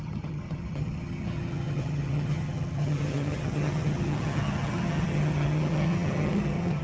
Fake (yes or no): yes